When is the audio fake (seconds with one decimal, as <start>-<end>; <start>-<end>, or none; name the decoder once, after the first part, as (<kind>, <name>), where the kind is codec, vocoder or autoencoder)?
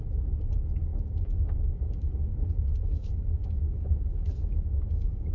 0.9-2.1 (autoencoder, DAC-VAE); 2.7-5.3